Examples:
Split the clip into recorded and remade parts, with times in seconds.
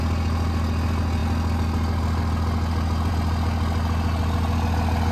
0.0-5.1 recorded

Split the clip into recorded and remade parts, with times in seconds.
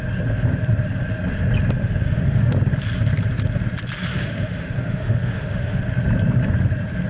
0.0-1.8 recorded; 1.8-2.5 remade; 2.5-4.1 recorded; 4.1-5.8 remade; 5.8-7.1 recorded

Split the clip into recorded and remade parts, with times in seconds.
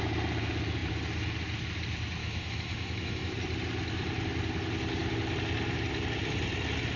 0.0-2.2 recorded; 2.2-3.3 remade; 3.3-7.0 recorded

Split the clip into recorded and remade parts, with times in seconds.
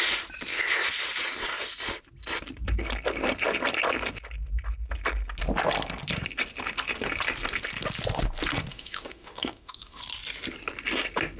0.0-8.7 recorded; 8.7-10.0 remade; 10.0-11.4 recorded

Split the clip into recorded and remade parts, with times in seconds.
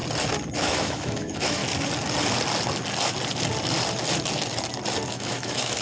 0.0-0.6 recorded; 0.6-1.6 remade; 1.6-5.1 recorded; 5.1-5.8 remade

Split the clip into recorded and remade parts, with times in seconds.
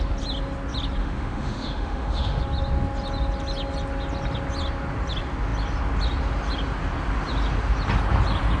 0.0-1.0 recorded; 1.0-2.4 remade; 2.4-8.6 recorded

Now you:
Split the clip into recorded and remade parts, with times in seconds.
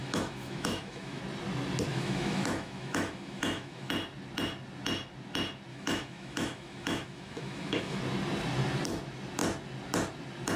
0.0-1.2 remade; 1.2-1.9 recorded; 1.9-3.9 remade; 3.9-5.7 recorded; 5.7-8.0 remade; 8.0-10.6 recorded